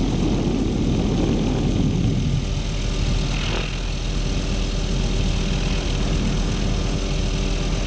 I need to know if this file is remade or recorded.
recorded